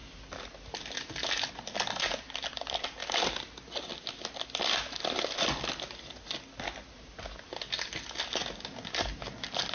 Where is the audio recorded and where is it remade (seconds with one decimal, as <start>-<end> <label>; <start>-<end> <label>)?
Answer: 0.0-3.0 recorded; 3.0-3.8 remade; 3.8-9.7 recorded